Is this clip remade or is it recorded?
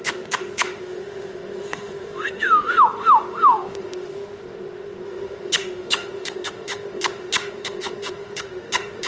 remade